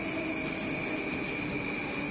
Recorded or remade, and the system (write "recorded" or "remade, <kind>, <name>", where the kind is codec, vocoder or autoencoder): recorded